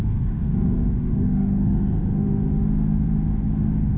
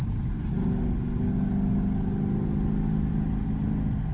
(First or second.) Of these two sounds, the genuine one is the second